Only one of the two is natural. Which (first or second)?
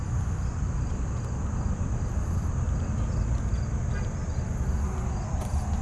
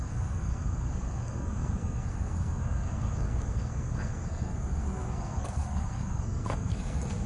first